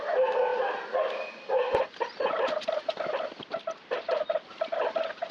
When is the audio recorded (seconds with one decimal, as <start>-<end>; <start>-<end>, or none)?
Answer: 0.0-5.3